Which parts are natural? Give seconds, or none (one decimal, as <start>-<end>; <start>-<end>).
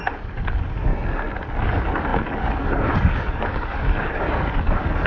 0.9-1.6